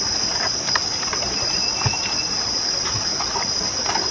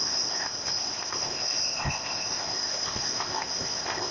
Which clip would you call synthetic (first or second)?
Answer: second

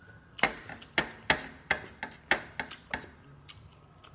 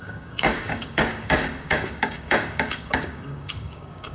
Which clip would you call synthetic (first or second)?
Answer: second